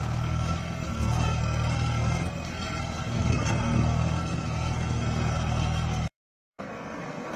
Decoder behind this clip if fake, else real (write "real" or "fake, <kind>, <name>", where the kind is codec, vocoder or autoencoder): fake, codec, SNAC